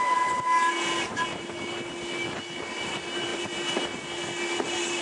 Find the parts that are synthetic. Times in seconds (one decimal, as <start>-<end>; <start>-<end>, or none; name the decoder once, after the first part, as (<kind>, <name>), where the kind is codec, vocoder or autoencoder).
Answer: none